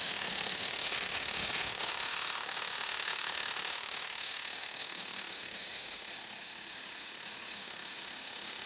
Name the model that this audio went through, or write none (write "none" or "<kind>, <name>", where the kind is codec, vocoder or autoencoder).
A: autoencoder, DAC-VAE